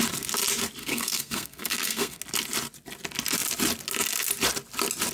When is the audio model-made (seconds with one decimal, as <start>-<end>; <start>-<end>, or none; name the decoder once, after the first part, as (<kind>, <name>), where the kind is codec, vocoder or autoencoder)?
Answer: 0.8-2.2 (codec, SNAC)